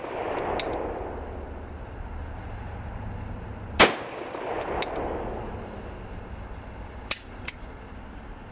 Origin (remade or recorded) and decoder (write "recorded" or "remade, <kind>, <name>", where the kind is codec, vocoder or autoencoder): recorded